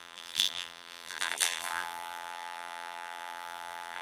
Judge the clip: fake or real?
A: fake